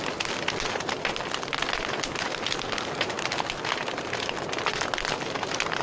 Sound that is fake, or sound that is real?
real